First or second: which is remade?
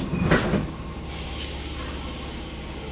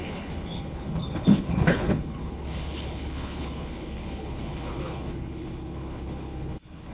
second